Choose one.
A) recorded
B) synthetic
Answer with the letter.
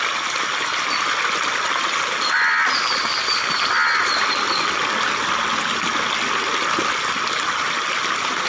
A